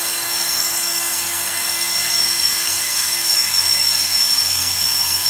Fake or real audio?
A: fake